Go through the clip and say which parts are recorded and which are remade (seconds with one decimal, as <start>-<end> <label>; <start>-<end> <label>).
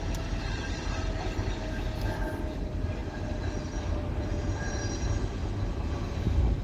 0.0-6.6 recorded